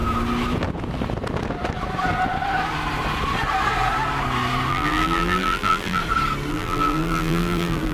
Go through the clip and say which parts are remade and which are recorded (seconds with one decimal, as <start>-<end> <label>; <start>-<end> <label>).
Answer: 0.0-4.7 recorded; 4.7-6.0 remade; 6.0-6.5 recorded; 6.5-7.9 remade